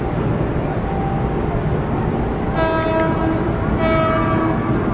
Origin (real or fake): real